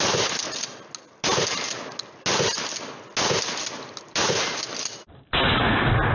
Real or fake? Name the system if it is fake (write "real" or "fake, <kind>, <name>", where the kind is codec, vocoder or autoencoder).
real